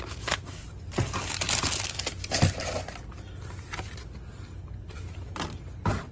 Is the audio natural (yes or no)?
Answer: yes